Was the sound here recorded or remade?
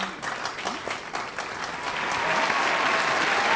recorded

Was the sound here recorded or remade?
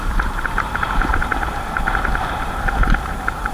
remade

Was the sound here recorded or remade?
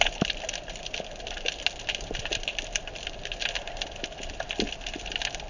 recorded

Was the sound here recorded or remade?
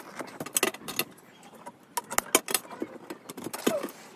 recorded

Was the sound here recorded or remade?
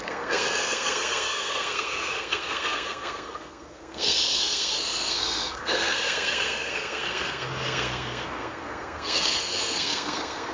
remade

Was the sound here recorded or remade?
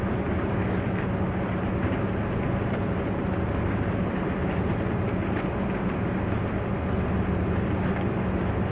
recorded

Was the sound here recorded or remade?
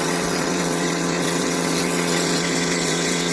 remade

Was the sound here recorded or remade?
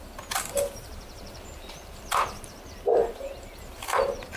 recorded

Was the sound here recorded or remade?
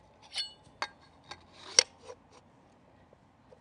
recorded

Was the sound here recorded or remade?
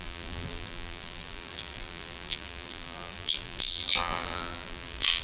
remade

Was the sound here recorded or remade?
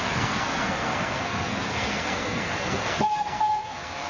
remade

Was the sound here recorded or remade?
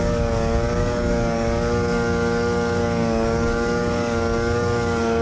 remade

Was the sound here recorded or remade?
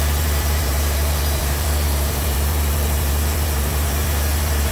remade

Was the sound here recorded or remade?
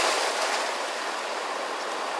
recorded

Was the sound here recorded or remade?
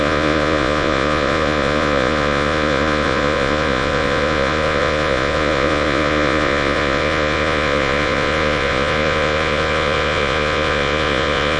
remade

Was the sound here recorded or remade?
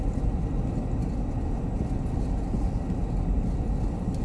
recorded